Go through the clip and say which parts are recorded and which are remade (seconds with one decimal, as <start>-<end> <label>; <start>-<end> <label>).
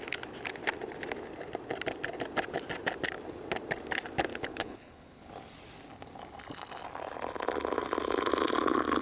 0.0-4.3 recorded; 4.3-5.3 remade; 5.3-9.0 recorded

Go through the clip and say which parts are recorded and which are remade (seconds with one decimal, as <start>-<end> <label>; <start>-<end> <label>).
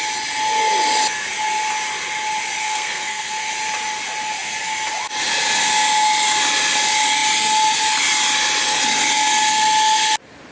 0.0-2.6 recorded; 2.6-3.5 remade; 3.5-10.5 recorded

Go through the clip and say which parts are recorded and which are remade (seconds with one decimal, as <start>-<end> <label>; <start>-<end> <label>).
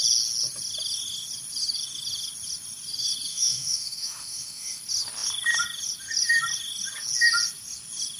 0.0-3.3 recorded; 3.3-4.8 remade; 4.8-8.2 recorded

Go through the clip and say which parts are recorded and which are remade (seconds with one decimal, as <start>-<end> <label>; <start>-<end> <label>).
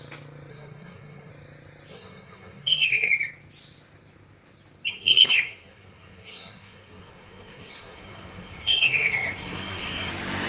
0.0-0.5 recorded; 0.5-1.3 remade; 1.3-1.9 recorded; 1.9-3.1 remade; 3.1-4.9 recorded; 4.9-10.1 remade; 10.1-10.5 recorded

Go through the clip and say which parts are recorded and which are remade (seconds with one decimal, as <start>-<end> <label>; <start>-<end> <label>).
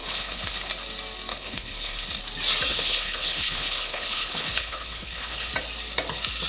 0.0-0.7 remade; 0.7-1.3 recorded; 1.3-2.2 remade; 2.2-2.7 recorded; 2.7-5.5 remade; 5.5-6.5 recorded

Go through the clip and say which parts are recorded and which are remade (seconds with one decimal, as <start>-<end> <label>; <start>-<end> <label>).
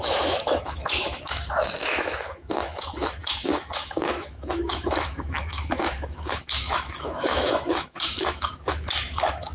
0.0-9.5 remade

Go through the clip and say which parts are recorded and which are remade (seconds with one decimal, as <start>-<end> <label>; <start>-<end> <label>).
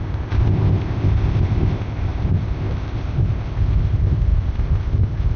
0.0-5.4 remade